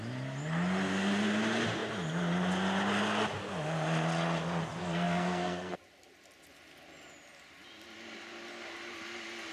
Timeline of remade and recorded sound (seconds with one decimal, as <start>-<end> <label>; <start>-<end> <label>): 0.0-4.8 recorded; 4.8-5.8 remade; 5.8-9.5 recorded